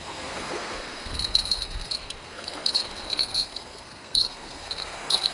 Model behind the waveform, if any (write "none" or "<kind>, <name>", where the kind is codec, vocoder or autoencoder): codec, SNAC